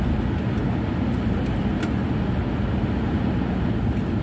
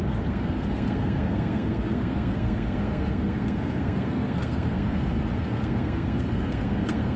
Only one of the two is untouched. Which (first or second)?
first